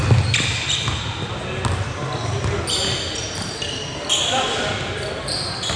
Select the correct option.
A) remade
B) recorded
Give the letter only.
B